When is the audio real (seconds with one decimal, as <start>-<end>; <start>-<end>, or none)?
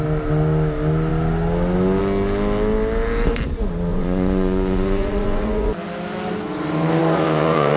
0.0-3.9; 5.7-7.0